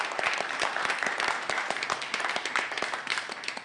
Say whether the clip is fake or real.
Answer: fake